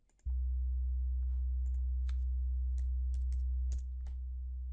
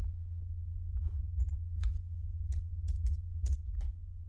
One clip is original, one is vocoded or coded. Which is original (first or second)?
first